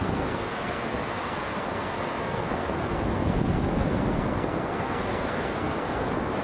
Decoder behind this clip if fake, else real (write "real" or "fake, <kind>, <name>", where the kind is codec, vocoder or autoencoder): fake, codec, SNAC